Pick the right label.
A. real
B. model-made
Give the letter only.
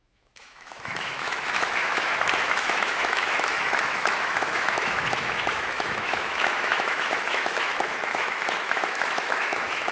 B